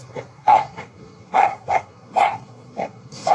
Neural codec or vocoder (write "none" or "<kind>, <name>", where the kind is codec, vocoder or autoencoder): codec, SNAC